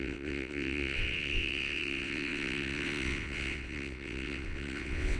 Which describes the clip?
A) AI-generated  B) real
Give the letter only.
A